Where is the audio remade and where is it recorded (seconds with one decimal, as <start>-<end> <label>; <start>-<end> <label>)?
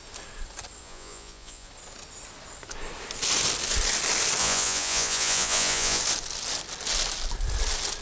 0.0-0.8 recorded; 0.8-1.7 remade; 1.7-4.4 recorded; 4.4-6.0 remade; 6.0-8.0 recorded